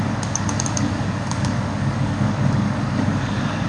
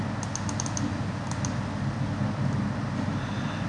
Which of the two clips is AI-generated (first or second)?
first